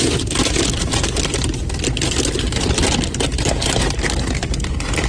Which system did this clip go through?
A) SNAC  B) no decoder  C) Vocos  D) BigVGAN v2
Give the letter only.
B